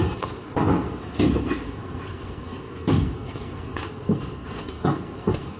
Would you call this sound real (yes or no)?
no